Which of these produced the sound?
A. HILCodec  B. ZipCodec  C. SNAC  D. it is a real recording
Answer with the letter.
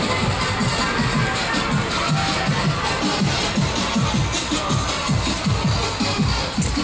D